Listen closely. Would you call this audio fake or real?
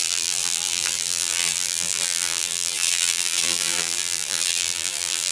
fake